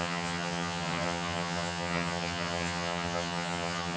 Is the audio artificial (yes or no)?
yes